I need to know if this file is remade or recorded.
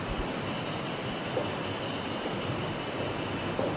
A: recorded